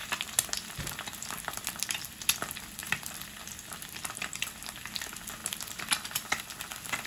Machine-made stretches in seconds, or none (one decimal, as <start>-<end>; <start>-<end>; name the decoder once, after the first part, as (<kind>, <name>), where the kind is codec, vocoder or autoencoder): 2.8-3.3 (vocoder, BigVGAN v2); 5.4-6.4

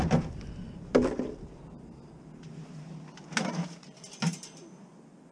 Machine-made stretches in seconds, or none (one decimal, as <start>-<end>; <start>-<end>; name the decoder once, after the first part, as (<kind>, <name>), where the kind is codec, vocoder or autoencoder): none

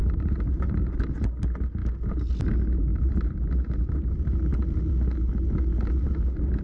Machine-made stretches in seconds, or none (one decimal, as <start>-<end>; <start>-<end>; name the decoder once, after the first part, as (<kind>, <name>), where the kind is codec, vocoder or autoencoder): 0.0-1.0 (vocoder, BigVGAN v2); 2.9-4.1

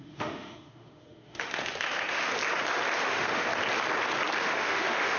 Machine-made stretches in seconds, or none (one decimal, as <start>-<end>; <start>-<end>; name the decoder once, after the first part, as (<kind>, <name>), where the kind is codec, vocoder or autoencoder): 0.0-2.3 (autoencoder, DAC-VAE); 3.0-3.5; 4.4-5.2

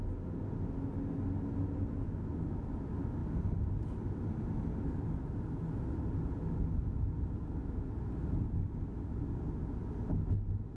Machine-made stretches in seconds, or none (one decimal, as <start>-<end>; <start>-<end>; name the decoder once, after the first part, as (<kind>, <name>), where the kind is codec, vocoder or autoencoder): none